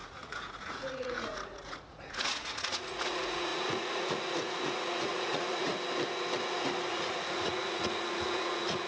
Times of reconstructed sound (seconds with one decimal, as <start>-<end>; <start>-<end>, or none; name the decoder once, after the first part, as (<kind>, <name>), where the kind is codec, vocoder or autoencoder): 0.0-5.7 (vocoder, Vocos); 6.9-8.9